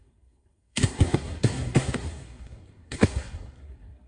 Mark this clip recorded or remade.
remade